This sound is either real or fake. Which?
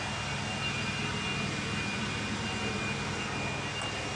real